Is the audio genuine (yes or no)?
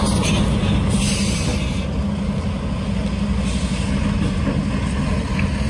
yes